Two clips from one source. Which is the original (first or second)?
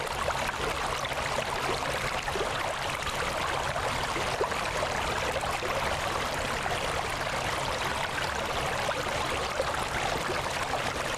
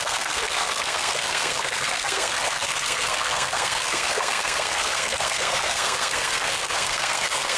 first